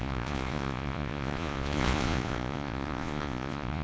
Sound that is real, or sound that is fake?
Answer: fake